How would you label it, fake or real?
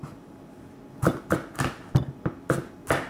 real